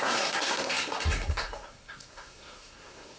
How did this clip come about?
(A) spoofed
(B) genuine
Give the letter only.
A